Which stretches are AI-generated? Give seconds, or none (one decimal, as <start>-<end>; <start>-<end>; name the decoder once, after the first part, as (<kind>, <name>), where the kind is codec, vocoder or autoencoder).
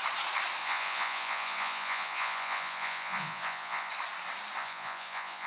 0.6-3.9 (vocoder, Vocos); 4.6-5.5